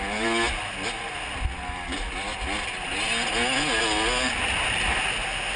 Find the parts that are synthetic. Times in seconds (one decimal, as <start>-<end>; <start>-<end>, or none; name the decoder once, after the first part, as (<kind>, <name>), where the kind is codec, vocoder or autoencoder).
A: none